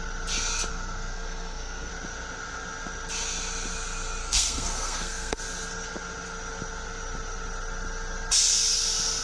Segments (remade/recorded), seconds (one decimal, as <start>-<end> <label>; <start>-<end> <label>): 0.0-0.7 recorded; 0.7-1.9 remade; 1.9-4.2 recorded; 4.2-5.4 remade; 5.4-9.2 recorded